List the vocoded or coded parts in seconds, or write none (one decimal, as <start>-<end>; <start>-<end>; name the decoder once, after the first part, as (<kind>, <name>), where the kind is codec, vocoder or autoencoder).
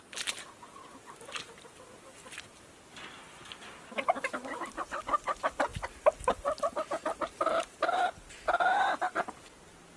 none